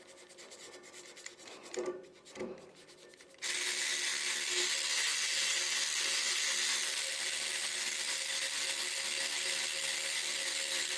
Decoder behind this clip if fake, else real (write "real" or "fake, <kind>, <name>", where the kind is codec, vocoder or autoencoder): real